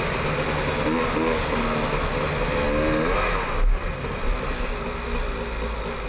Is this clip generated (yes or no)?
no